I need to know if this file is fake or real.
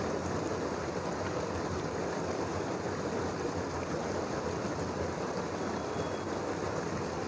real